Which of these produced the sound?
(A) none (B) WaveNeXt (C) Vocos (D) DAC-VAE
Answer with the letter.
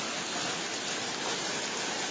A